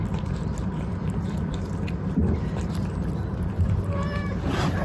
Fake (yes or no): no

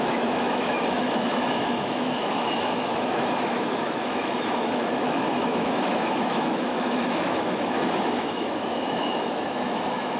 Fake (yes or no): yes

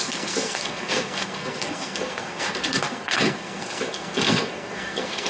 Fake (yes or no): yes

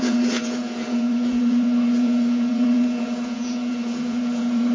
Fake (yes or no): yes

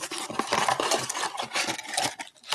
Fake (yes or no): yes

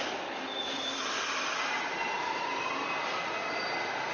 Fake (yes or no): no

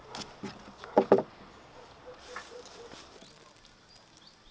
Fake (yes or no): no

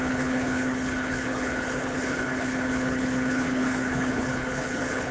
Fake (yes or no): yes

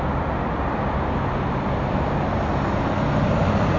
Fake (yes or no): no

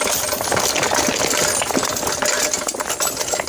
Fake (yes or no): no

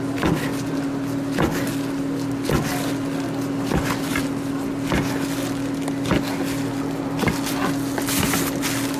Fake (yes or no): no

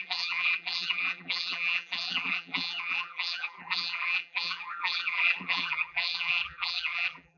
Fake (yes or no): yes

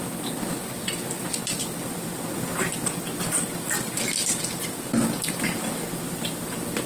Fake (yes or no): no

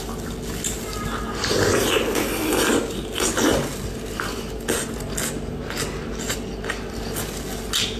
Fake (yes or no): no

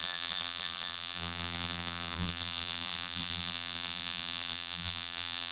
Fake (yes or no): yes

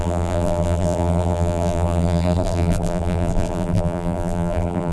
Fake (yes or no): yes